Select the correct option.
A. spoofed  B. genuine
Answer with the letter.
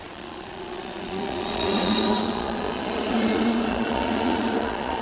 A